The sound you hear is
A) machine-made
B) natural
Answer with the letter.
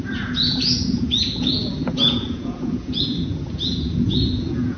A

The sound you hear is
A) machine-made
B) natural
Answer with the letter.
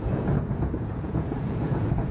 A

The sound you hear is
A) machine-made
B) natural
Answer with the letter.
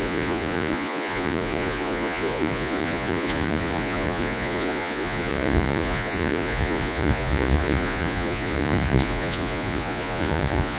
A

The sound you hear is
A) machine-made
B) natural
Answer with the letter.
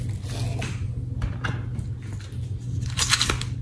B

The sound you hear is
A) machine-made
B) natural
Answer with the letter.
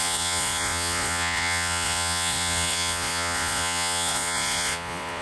A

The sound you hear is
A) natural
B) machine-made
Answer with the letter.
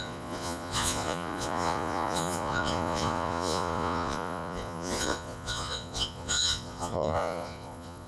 B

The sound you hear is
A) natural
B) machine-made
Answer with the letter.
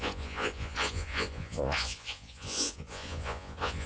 B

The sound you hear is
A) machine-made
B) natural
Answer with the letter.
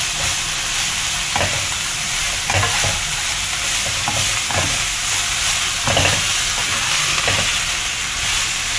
B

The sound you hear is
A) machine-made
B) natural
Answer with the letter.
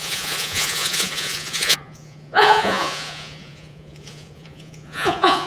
A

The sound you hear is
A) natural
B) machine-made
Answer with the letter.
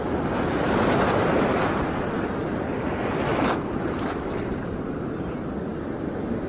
A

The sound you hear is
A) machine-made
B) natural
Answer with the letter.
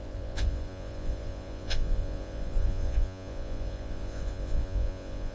A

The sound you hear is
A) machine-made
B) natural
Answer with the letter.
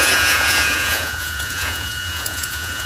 A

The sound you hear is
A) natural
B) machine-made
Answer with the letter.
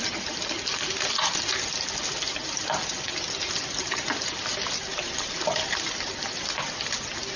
A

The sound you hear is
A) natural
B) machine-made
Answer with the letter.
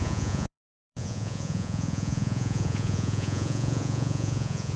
B